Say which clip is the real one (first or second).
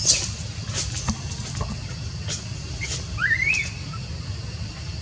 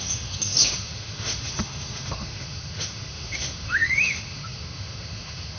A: first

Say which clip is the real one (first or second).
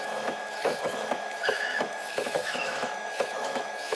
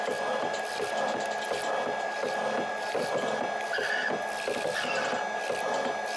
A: second